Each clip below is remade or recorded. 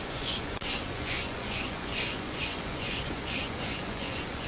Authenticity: remade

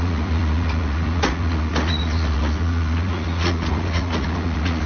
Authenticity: remade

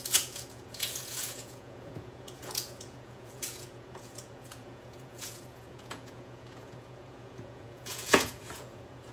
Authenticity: remade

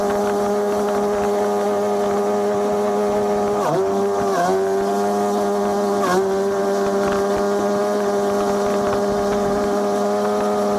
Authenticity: recorded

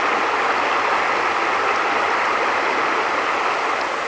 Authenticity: recorded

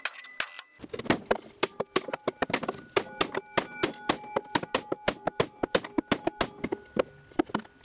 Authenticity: recorded